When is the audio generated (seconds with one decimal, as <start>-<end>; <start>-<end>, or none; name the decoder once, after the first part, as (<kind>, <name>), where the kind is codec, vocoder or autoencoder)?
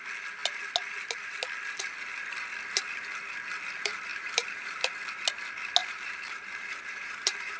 4.1-4.8 (vocoder, BigVGAN v2); 5.8-7.6